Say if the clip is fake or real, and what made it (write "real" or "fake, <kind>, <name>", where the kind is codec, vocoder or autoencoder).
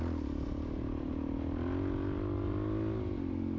real